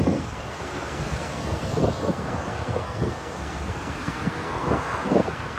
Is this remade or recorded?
remade